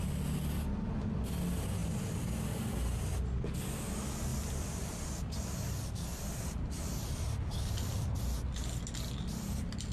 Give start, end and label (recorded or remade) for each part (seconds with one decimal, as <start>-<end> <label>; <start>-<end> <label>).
0.0-4.3 recorded; 4.3-5.4 remade; 5.4-9.9 recorded